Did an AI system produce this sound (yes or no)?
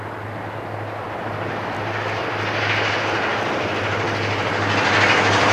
no